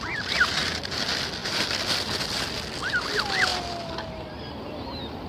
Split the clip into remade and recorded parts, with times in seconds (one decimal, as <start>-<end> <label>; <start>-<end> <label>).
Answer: 0.0-5.3 recorded